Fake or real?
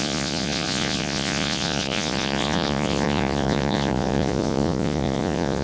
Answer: fake